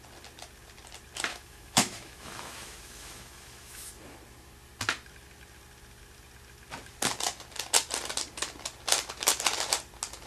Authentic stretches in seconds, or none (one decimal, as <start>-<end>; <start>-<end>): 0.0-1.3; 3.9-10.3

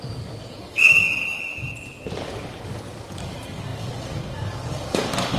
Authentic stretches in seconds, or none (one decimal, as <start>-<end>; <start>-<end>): 1.5-2.2

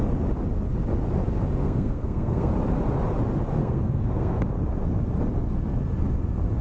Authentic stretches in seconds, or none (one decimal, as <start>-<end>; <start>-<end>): 0.0-1.6; 2.5-3.6; 4.4-6.6

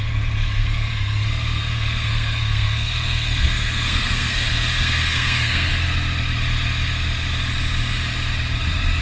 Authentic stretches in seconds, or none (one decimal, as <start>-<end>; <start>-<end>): 5.7-9.0

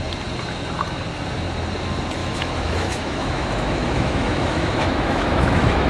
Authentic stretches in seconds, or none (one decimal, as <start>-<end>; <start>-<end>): 0.0-2.2

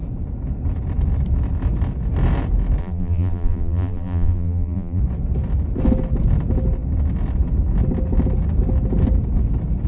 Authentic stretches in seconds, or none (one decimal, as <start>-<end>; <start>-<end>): 0.0-2.8; 5.0-9.9